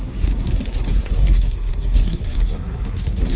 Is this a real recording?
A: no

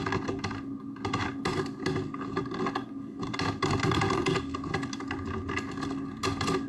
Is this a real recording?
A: yes